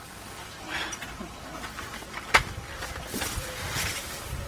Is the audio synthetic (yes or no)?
yes